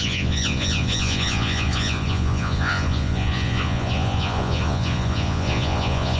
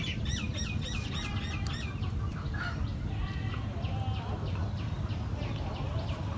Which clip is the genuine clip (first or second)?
second